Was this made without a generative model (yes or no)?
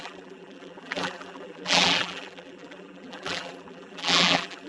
no